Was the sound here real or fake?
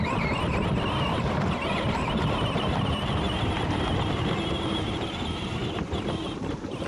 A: real